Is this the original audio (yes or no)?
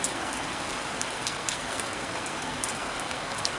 no